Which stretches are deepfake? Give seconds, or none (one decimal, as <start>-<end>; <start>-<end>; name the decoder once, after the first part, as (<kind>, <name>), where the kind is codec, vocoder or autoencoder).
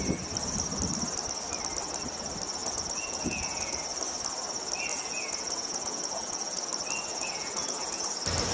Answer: 2.6-3.8 (vocoder, Vocos); 4.9-6.6; 7.1-8.1